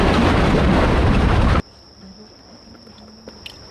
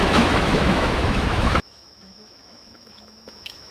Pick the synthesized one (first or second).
second